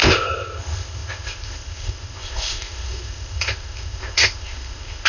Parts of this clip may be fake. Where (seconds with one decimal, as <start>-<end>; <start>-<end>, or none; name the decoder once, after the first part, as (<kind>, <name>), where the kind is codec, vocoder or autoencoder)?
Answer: 0.0-5.1 (codec, ZipCodec)